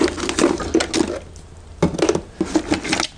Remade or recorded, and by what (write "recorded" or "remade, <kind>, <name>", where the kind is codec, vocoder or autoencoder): recorded